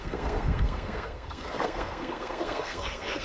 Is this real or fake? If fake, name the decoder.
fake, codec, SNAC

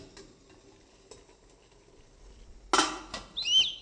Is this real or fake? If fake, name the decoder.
real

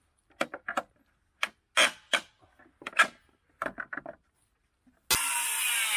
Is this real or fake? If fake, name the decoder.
real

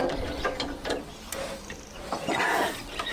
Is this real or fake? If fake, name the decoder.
real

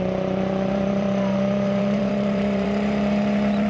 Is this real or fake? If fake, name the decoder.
fake, vocoder, BigVGAN v2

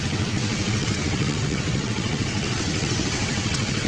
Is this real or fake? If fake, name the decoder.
fake, vocoder, WaveNeXt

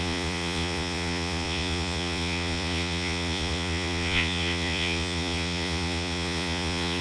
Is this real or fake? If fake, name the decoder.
fake, vocoder, Vocos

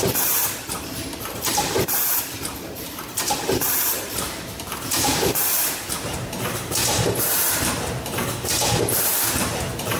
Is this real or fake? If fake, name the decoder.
fake, vocoder, BigVGAN v2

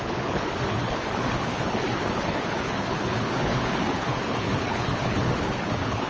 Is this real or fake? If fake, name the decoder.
fake, codec, HILCodec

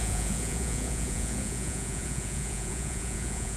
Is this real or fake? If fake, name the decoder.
fake, vocoder, Vocos